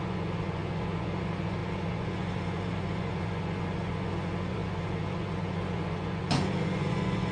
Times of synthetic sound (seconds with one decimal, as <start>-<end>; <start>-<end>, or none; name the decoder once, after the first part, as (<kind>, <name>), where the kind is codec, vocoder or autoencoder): 0.0-7.3 (vocoder, Vocos)